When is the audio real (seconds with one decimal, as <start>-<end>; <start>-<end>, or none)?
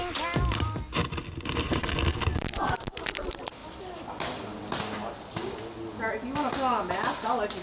0.0-7.6